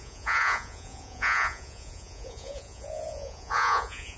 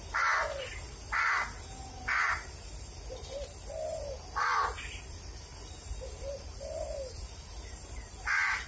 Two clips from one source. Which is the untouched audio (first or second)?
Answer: second